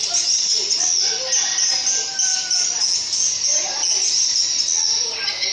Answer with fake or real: real